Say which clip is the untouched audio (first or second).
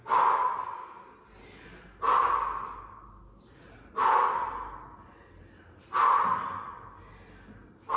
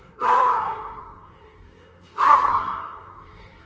first